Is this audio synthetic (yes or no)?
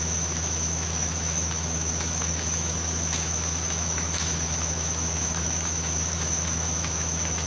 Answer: yes